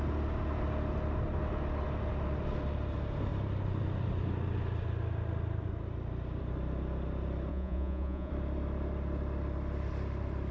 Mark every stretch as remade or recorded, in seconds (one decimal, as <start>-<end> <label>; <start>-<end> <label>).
0.0-7.5 recorded; 7.5-8.3 remade; 8.3-10.5 recorded